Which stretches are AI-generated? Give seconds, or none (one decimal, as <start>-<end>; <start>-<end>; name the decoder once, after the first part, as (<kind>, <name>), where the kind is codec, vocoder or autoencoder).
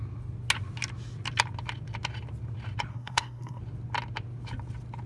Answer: 2.9-3.6 (codec, SNAC)